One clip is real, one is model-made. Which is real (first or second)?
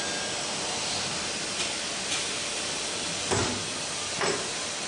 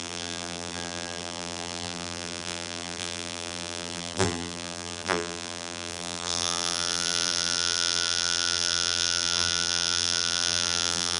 first